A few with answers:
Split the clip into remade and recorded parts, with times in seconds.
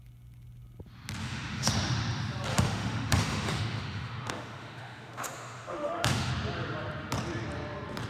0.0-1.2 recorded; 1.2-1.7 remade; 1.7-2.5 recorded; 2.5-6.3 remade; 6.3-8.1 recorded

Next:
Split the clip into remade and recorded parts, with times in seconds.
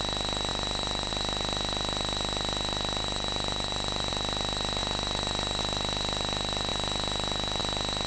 0.0-0.5 recorded; 0.5-1.1 remade; 1.1-3.0 recorded; 3.0-4.1 remade; 4.1-8.1 recorded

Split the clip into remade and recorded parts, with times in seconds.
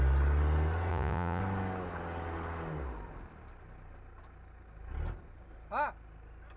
0.0-0.9 recorded; 0.9-1.4 remade; 1.4-6.6 recorded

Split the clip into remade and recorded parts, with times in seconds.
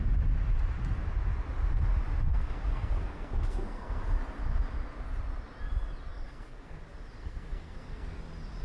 0.0-2.3 recorded; 2.3-4.0 remade; 4.0-6.1 recorded; 6.1-6.8 remade; 6.8-7.2 recorded; 7.2-8.2 remade; 8.2-8.6 recorded